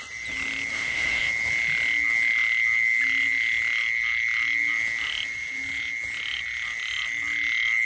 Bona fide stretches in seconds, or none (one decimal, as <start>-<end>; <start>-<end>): 0.0-0.7; 1.3-7.9

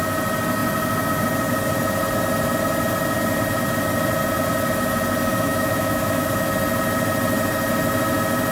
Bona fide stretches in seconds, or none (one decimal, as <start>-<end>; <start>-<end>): 0.0-5.3; 6.5-8.5

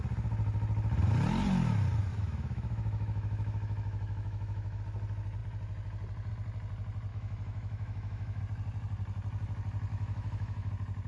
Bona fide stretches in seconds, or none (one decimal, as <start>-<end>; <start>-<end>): 0.0-2.1; 4.8-7.1; 8.4-9.9; 10.7-11.1

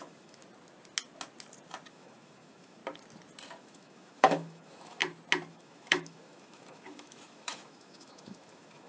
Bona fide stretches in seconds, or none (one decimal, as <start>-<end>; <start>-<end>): 0.4-1.9; 2.8-3.6; 5.0-5.5

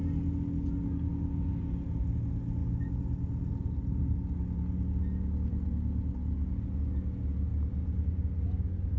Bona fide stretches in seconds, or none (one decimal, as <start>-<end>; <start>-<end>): 0.0-9.0